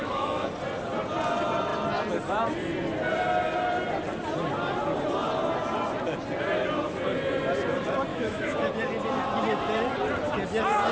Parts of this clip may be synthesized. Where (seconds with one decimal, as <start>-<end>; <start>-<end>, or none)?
0.0-0.5; 8.1-8.7

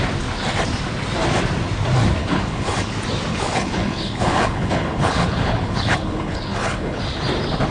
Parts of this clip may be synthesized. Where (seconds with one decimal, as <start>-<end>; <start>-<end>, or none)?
2.2-2.9; 3.3-7.0

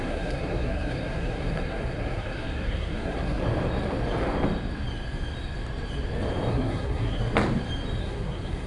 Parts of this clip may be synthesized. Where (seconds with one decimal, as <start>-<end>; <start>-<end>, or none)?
0.0-3.4; 6.5-7.2; 8.0-8.7

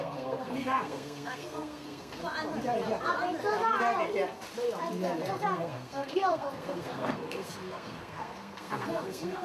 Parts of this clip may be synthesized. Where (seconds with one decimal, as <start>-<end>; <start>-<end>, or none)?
0.0-2.2; 5.3-9.4

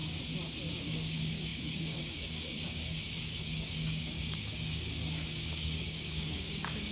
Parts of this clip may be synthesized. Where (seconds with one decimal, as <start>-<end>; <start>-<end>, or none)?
0.7-6.9

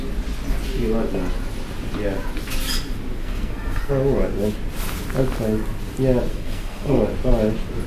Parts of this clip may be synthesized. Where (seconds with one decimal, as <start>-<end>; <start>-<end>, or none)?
3.2-3.9; 6.3-7.0

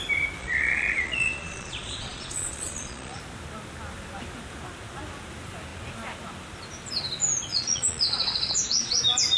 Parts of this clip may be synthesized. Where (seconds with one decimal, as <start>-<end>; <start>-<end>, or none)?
0.4-3.2; 7.5-9.0